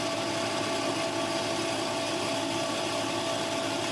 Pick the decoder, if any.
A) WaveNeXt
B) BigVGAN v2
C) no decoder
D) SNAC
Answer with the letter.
C